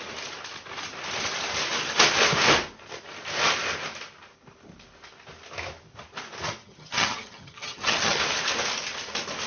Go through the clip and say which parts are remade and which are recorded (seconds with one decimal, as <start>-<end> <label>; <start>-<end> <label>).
0.0-6.6 recorded; 6.6-8.2 remade; 8.2-9.5 recorded